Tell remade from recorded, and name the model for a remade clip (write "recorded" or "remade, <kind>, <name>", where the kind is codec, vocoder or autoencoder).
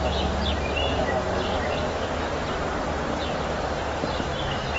recorded